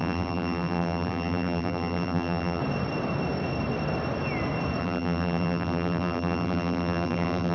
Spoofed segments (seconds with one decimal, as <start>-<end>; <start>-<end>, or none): 0.0-2.6; 4.8-7.5